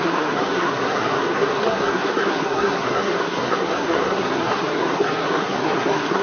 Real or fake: fake